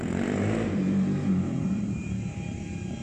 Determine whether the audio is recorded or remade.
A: remade